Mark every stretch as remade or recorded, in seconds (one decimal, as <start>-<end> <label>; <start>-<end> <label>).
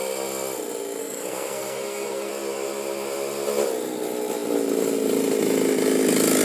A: 0.0-1.0 recorded; 1.0-2.3 remade; 2.3-6.4 recorded